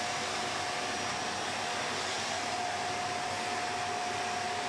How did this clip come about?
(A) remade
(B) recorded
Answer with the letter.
B